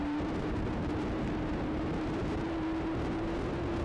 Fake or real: fake